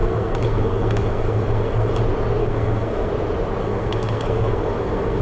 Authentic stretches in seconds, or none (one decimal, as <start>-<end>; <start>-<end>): 1.9-2.4; 3.1-3.6